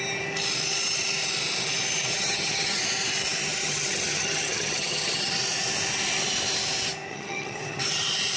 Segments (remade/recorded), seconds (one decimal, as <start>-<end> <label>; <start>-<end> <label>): 0.0-2.1 recorded; 2.1-2.8 remade; 2.8-3.6 recorded; 3.6-5.3 remade; 5.3-7.1 recorded; 7.1-7.8 remade; 7.8-8.4 recorded